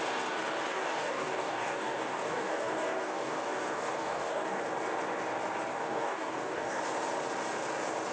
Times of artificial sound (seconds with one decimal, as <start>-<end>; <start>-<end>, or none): 0.7-4.6; 5.7-6.8